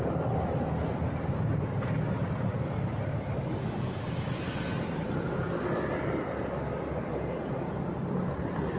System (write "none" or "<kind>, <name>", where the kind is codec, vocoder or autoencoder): none